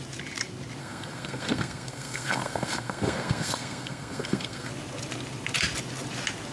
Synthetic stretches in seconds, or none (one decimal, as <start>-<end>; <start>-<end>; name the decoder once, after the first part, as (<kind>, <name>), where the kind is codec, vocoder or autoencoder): 0.8-4.7 (codec, SNAC)